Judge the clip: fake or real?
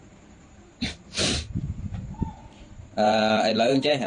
fake